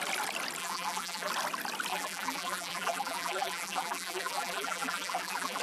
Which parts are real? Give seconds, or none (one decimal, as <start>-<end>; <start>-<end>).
0.0-0.6; 1.3-1.9